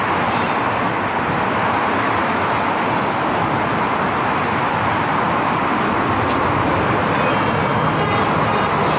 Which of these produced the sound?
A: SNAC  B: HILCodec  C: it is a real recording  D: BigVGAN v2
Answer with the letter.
C